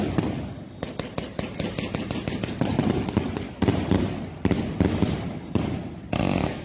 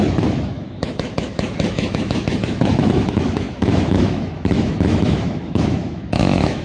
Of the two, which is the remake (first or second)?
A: second